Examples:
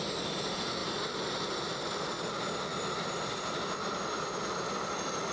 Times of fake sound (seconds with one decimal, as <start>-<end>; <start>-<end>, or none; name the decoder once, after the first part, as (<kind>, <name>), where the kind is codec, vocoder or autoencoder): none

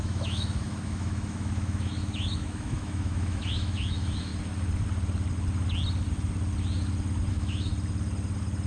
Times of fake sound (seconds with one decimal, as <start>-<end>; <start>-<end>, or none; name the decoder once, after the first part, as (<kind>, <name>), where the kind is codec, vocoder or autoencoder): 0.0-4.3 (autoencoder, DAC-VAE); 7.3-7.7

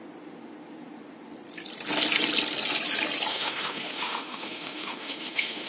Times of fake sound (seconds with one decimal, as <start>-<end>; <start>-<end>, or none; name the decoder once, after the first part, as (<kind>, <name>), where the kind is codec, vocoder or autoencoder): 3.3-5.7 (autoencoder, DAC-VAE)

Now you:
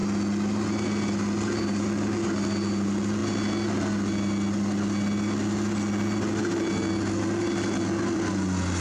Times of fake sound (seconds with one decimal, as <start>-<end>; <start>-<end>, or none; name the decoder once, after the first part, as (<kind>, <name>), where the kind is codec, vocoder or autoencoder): none

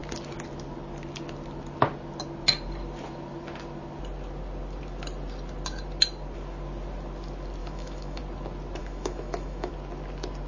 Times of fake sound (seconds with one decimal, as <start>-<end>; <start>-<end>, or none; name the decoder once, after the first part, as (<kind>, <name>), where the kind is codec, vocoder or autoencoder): 7.6-8.2 (autoencoder, DAC-VAE); 8.8-9.7